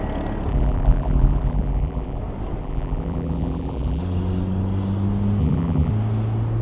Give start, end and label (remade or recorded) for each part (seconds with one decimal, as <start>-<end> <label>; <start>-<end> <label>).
0.0-0.5 recorded; 0.5-2.2 remade; 2.2-2.6 recorded; 2.6-4.0 remade; 4.0-5.4 recorded; 5.4-5.9 remade; 5.9-6.6 recorded